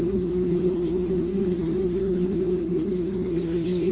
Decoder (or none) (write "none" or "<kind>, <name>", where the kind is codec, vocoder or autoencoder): codec, SNAC